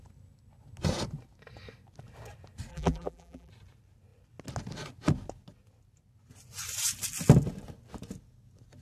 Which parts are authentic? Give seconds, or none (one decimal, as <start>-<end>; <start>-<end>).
0.0-2.7; 3.5-8.8